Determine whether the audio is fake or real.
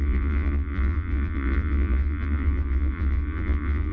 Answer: fake